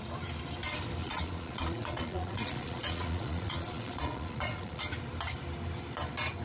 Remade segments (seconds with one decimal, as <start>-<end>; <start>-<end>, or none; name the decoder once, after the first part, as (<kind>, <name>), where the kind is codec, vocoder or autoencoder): 1.0-4.8 (vocoder, Vocos)